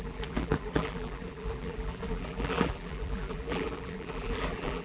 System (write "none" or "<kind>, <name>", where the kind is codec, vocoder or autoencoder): vocoder, BigVGAN v2